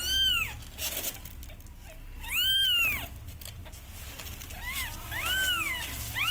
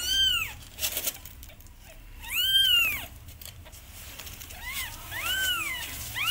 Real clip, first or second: first